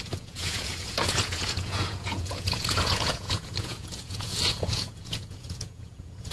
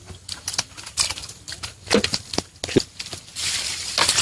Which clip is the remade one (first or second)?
first